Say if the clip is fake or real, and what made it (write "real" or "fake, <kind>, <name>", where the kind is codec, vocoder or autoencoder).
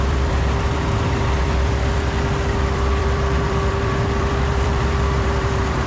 fake, vocoder, BigVGAN v2